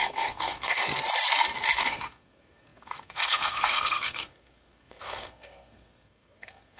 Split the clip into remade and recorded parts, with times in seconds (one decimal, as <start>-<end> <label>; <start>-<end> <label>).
0.0-0.8 remade; 0.8-1.8 recorded; 1.8-6.8 remade